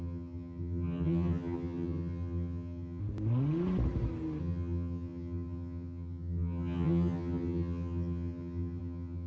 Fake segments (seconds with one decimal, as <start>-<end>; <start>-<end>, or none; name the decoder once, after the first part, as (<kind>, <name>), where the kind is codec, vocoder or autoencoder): 0.0-3.0 (vocoder, HiFi-GAN); 4.4-9.3